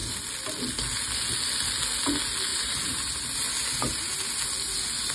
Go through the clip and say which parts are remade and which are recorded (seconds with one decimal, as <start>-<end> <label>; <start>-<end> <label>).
0.0-2.5 recorded; 2.5-4.3 remade; 4.3-5.1 recorded

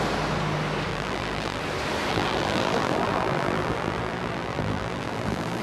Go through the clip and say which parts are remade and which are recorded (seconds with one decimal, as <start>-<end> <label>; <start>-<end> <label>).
0.0-0.9 recorded; 0.9-1.6 remade; 1.6-2.1 recorded; 2.1-5.6 remade

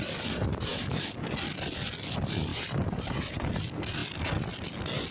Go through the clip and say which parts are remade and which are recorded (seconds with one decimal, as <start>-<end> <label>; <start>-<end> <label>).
0.0-2.5 recorded; 2.5-3.6 remade; 3.6-5.1 recorded

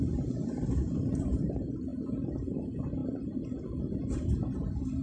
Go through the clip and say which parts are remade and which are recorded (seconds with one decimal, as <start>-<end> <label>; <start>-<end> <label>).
0.0-3.0 remade; 3.0-3.8 recorded; 3.8-5.0 remade

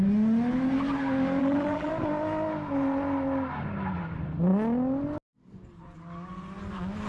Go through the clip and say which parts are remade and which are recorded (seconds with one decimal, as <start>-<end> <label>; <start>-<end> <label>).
0.0-1.4 recorded; 1.4-1.9 remade; 1.9-7.1 recorded

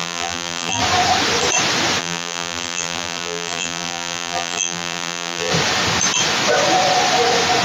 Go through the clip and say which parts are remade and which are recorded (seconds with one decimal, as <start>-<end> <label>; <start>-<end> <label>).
0.0-0.8 remade; 0.8-2.0 recorded; 2.0-5.5 remade; 5.5-7.6 recorded

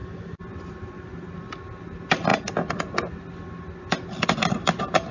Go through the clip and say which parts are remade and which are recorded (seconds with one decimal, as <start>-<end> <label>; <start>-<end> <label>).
0.0-5.1 recorded